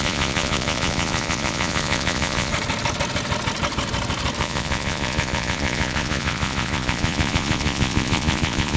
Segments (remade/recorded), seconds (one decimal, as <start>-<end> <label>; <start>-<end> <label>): 0.0-2.5 remade; 2.5-4.4 recorded; 4.4-8.8 remade